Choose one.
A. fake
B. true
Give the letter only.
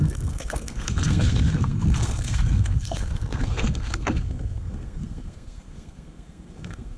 A